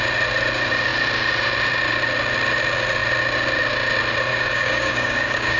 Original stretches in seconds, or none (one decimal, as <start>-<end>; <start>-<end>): 0.0-4.3